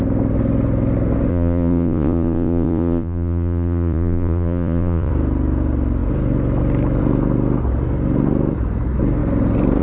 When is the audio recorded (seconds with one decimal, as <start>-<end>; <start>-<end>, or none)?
0.0-1.3; 5.1-9.8